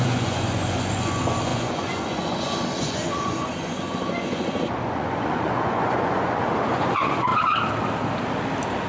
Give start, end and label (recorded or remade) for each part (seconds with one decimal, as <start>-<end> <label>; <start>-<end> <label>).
0.0-7.3 remade; 7.3-8.9 recorded

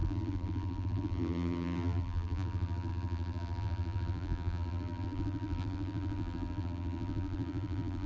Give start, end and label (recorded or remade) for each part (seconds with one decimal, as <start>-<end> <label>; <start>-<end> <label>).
0.0-8.1 remade

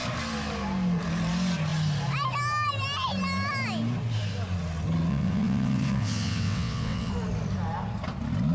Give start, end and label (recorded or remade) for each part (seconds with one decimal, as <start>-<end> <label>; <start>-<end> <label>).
0.0-5.1 recorded; 5.1-7.1 remade; 7.1-8.5 recorded